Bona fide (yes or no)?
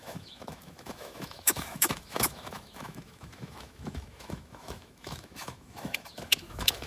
no